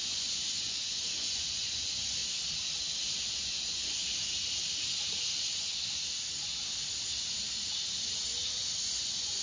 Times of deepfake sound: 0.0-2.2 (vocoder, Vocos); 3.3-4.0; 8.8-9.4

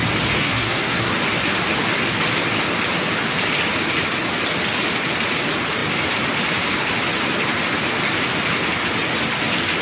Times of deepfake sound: 0.4-1.1 (codec, SNAC)

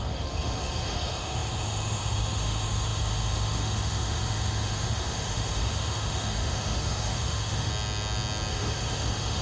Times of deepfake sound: 0.0-7.7 (autoencoder, DAC-VAE); 8.5-9.4